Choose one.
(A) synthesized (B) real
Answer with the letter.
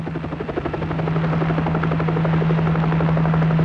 B